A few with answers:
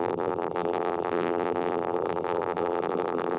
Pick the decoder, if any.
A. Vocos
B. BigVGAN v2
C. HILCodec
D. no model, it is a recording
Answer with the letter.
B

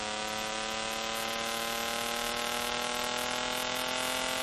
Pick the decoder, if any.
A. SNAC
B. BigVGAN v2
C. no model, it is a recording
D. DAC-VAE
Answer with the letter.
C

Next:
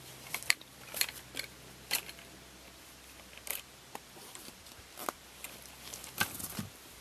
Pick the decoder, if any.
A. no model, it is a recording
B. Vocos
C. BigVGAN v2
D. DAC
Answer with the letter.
C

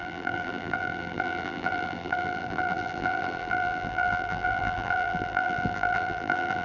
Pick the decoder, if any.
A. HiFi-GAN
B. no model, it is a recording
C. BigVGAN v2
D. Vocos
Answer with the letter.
C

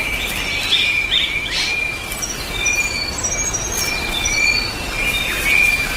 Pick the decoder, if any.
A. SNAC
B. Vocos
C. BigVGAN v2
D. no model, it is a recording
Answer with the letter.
D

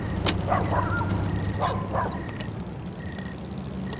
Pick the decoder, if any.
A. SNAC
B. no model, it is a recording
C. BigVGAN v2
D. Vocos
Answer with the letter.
B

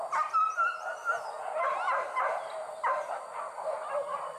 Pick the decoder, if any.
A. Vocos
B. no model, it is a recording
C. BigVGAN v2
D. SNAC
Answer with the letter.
B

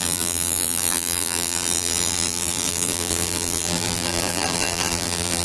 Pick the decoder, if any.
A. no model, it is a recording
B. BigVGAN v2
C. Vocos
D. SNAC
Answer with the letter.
B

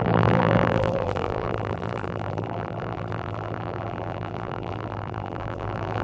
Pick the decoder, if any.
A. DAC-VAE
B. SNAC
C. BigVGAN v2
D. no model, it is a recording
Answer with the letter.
C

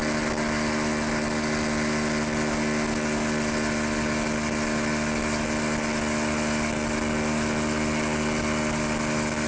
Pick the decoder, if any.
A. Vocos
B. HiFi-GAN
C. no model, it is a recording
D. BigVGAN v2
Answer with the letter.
C